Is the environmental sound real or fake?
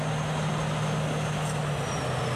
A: real